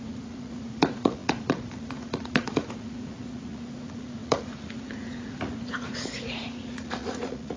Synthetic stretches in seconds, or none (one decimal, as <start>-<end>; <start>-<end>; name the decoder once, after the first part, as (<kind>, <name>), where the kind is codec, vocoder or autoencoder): 0.0-7.6 (vocoder, Vocos)